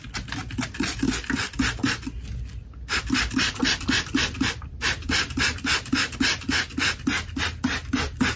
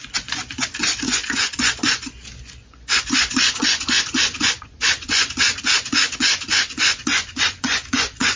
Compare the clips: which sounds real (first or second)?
first